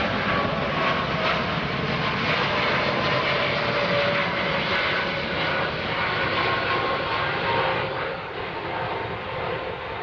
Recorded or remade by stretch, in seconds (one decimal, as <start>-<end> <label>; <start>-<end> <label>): 0.0-7.7 recorded; 7.7-8.3 remade; 8.3-10.0 recorded